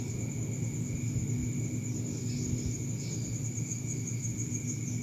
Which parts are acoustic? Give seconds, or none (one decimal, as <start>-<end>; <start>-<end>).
0.0-3.7; 4.6-5.0